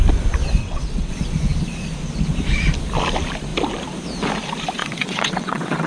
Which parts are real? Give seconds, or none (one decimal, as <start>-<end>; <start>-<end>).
0.0-0.6; 1.1-4.8

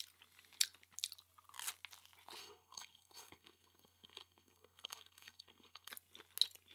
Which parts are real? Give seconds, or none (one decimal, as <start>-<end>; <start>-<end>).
0.0-2.4; 5.9-6.7